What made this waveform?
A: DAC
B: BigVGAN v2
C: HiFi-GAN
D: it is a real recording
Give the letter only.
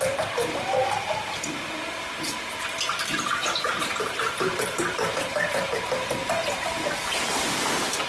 B